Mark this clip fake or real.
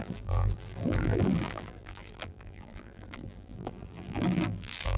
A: fake